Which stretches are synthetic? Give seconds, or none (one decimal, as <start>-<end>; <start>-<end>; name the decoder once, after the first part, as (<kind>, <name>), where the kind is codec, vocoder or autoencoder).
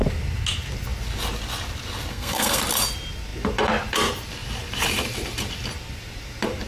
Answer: 2.1-2.6 (codec, SNAC)